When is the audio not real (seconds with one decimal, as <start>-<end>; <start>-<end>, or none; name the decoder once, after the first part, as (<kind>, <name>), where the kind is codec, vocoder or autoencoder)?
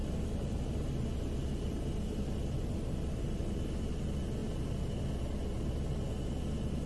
0.0-3.9 (vocoder, BigVGAN v2)